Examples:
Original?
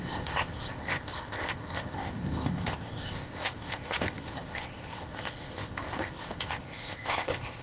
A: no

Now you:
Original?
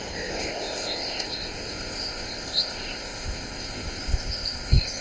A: no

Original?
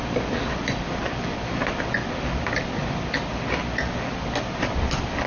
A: yes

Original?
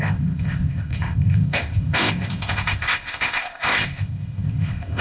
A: no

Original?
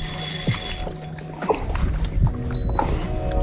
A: yes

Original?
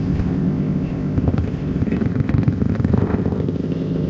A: no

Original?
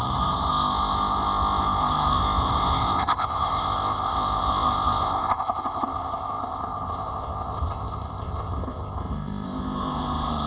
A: no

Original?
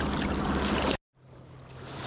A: yes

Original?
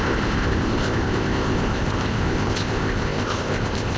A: no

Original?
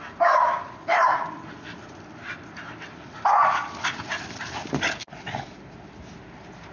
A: yes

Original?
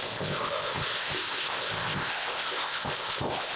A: no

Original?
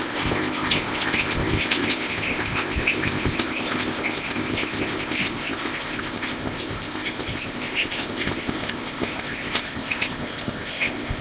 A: no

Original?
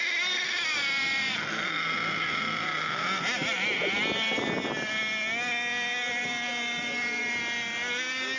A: yes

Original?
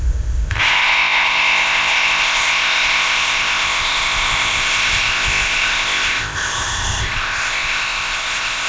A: no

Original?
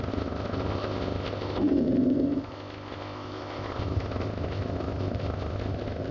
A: no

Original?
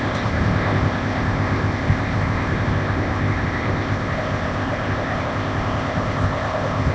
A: no